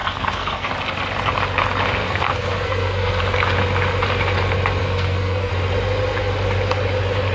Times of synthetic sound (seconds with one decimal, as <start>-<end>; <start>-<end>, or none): 0.0-0.7; 2.0-3.2; 4.8-5.5